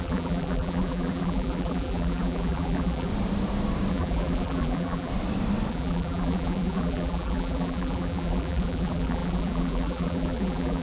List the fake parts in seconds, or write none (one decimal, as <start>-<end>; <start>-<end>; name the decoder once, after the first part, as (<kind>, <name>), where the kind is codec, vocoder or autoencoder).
0.0-3.1 (vocoder, BigVGAN v2); 3.9-5.1; 5.7-10.8